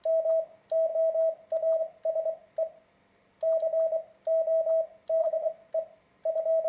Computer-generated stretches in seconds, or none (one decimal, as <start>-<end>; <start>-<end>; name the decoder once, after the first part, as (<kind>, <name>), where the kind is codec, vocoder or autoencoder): 5.2-5.7 (vocoder, Vocos)